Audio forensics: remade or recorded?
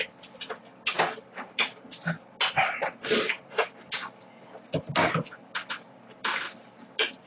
recorded